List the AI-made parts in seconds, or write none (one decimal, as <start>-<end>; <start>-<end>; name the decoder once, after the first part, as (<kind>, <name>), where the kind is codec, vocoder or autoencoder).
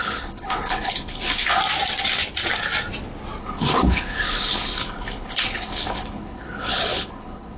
0.0-1.6 (codec, HILCodec); 3.4-7.6